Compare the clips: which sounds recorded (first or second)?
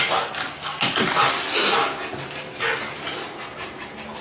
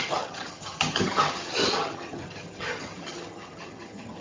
first